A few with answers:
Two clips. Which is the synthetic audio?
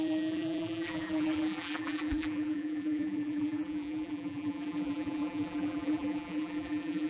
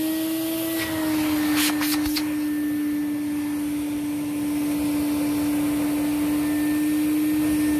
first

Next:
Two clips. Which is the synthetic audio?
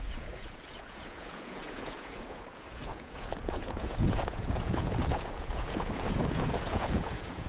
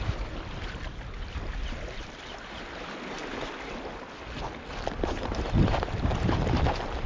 first